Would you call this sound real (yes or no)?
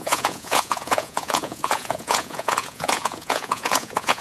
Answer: no